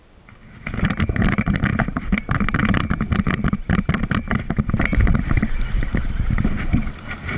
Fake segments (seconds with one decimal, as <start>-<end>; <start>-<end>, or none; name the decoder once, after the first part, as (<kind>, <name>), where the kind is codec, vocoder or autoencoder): 0.0-7.4 (vocoder, BigVGAN v2)